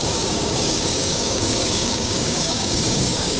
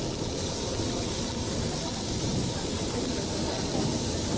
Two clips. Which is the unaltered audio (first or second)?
second